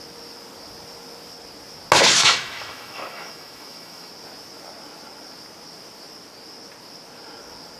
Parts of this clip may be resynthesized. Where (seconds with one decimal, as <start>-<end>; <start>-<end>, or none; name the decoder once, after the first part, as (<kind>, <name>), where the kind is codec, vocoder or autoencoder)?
2.2-4.1 (autoencoder, DAC-VAE)

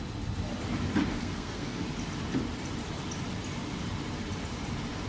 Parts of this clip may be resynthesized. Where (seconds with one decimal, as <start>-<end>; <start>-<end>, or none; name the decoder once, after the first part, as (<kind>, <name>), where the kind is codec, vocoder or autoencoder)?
1.1-1.8 (codec, SNAC)

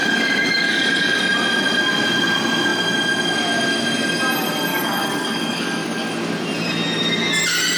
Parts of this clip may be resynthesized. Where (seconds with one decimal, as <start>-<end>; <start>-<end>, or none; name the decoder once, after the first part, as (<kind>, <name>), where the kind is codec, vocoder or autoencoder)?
0.0-1.2 (codec, DAC); 4.7-6.1

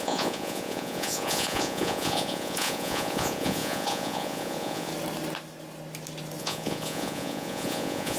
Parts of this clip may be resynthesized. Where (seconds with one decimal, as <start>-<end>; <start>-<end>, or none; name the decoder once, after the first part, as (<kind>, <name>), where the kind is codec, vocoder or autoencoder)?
0.0-4.9 (vocoder, Vocos); 6.4-8.2

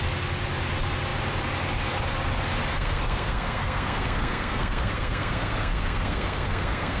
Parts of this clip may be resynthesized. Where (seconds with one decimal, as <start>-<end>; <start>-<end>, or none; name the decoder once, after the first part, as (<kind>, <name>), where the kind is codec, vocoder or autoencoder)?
2.7-7.0 (codec, SNAC)

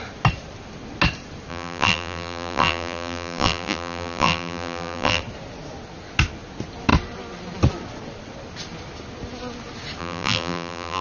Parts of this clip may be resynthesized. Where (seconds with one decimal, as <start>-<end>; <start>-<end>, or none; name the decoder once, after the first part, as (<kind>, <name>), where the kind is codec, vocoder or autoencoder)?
1.5-5.2 (vocoder, BigVGAN v2); 10.0-11.0

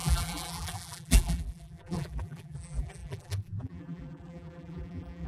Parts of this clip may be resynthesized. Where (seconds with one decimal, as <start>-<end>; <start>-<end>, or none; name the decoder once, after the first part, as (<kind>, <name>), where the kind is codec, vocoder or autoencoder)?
0.0-5.3 (vocoder, BigVGAN v2)